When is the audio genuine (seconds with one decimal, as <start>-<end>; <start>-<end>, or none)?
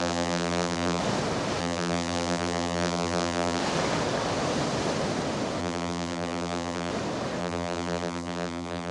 1.0-1.6; 3.6-5.6; 6.9-7.4